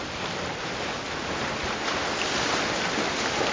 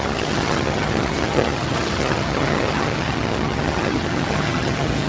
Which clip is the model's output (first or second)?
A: second